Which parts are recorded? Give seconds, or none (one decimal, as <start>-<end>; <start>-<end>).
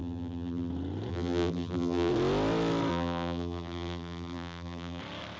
0.7-1.1; 2.1-2.9; 5.0-5.4